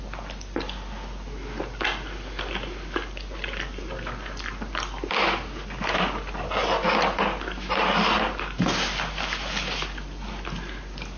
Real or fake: real